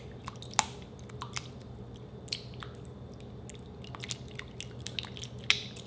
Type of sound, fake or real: real